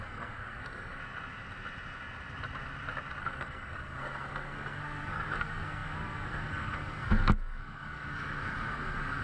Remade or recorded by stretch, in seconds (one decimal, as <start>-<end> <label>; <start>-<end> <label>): 0.0-1.0 remade; 1.0-3.2 recorded; 3.2-9.2 remade